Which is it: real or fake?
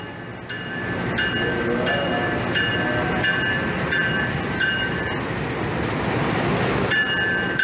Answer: real